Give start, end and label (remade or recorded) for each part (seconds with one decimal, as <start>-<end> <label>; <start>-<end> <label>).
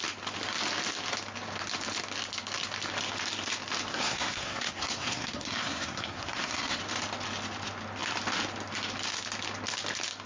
0.0-3.9 recorded; 3.9-6.8 remade; 6.8-10.3 recorded